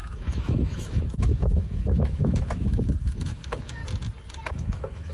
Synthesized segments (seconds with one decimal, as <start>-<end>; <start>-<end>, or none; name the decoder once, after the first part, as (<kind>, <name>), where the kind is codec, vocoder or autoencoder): 0.0-3.8 (autoencoder, DAC-VAE); 4.5-5.1